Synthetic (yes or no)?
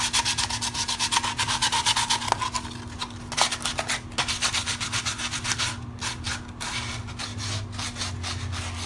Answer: no